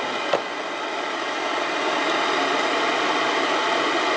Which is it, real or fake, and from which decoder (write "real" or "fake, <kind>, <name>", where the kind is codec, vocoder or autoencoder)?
real